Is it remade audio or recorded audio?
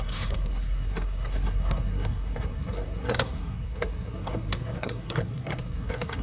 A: remade